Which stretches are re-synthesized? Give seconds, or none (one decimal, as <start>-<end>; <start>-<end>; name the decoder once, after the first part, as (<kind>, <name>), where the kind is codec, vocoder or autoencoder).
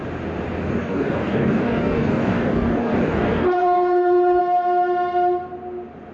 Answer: 0.7-4.4 (codec, DAC)